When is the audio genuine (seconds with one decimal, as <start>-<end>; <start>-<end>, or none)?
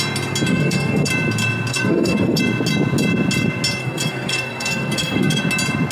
0.0-0.5; 1.1-1.7; 2.4-3.8; 5.4-5.9